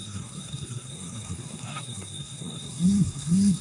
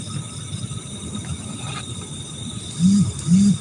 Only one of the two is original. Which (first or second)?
second